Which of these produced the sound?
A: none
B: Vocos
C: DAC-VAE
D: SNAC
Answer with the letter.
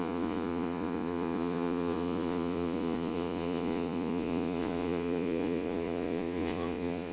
B